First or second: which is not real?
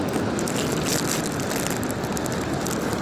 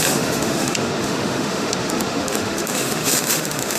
second